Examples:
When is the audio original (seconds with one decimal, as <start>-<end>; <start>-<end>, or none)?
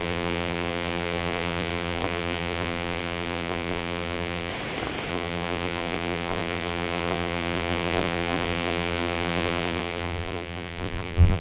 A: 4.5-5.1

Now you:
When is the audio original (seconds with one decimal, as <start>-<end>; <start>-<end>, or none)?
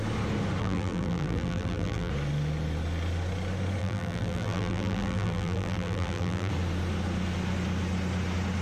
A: 0.0-0.6; 2.1-3.8; 6.5-8.6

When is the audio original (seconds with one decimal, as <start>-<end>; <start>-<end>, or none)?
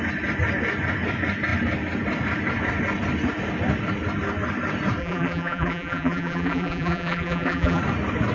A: 0.0-5.0; 7.8-8.3